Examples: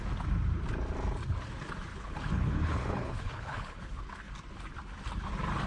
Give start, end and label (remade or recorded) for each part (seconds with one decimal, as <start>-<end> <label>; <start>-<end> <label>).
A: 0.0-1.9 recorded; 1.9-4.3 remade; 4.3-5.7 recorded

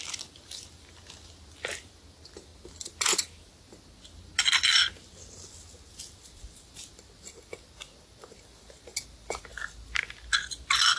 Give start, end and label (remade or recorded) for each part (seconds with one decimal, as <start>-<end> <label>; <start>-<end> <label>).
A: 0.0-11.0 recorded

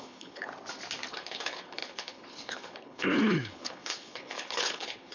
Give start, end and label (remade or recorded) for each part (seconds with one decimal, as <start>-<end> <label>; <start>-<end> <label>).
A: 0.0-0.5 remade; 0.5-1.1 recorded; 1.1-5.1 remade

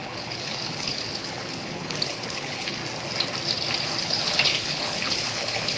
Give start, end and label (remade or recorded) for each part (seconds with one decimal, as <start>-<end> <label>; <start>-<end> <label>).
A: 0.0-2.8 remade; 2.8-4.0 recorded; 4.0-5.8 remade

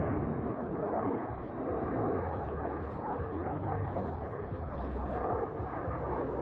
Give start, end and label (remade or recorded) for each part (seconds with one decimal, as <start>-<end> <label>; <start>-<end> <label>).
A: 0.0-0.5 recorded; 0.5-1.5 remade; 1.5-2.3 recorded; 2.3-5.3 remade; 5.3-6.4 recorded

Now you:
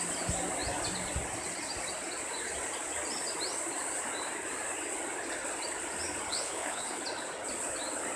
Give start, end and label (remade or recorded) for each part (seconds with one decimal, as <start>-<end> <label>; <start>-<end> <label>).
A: 0.0-6.3 recorded; 6.3-7.0 remade; 7.0-8.2 recorded

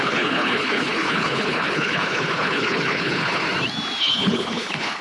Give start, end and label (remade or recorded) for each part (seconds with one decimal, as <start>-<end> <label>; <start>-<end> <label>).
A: 0.0-3.4 remade; 3.4-4.0 recorded; 4.0-5.0 remade

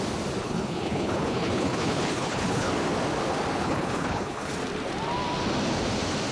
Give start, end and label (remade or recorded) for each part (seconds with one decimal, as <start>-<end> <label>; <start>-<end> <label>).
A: 0.0-0.4 recorded; 0.4-2.7 remade; 2.7-3.6 recorded; 3.6-4.5 remade; 4.5-6.3 recorded